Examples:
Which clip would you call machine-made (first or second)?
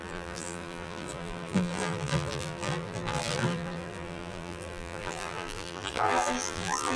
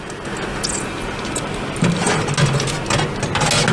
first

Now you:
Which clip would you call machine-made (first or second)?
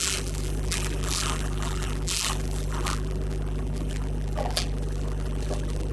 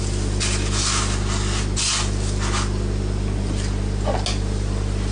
first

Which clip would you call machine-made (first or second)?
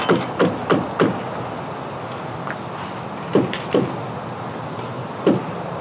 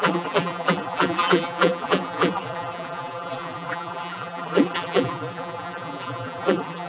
second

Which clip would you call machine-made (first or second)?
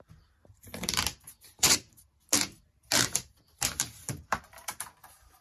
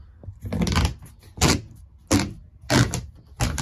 first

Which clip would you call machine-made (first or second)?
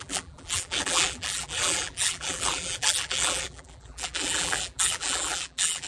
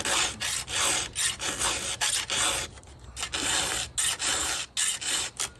first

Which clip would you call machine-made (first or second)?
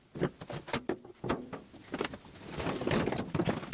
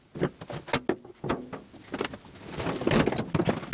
first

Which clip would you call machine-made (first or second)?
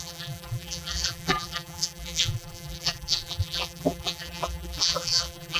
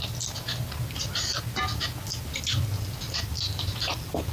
first